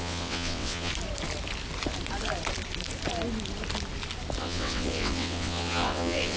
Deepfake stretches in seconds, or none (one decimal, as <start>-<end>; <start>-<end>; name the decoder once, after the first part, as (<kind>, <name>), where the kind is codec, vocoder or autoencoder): 0.0-0.9 (vocoder, WaveNeXt); 4.4-6.4